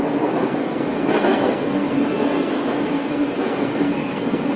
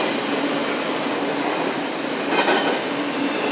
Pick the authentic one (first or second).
second